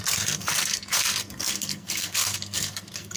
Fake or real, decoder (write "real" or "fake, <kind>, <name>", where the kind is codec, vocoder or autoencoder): fake, codec, SNAC